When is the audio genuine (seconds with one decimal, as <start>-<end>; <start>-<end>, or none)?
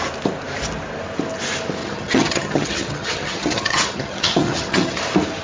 0.0-1.8; 5.0-5.4